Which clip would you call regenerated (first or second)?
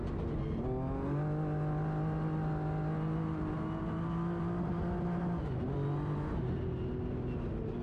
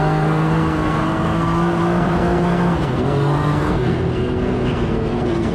second